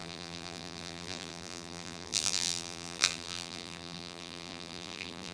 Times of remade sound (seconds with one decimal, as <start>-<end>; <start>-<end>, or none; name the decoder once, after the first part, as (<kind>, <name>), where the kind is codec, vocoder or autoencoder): 0.0-5.3 (vocoder, BigVGAN v2)